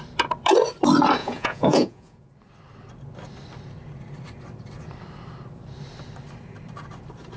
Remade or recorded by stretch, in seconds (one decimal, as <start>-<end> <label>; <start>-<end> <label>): 0.0-1.2 recorded; 1.2-2.3 remade; 2.3-7.4 recorded